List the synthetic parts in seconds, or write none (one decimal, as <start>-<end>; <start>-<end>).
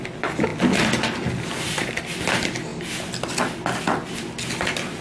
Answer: none